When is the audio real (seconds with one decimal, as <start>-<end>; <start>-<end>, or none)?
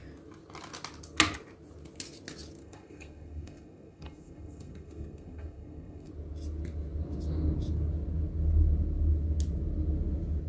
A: 0.0-2.6; 6.1-10.5